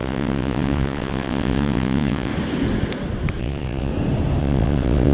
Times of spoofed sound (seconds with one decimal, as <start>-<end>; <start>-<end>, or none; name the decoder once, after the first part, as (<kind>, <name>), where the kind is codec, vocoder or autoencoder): 0.0-2.3 (vocoder, WaveNeXt); 3.4-3.9; 4.4-5.1